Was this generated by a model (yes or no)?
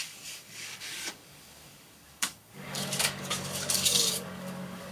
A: yes